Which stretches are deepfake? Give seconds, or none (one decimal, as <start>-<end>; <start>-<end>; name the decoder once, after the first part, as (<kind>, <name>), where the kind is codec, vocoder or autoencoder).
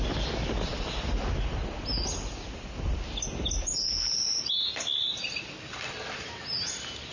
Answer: none